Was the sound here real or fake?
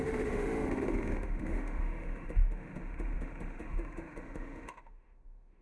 fake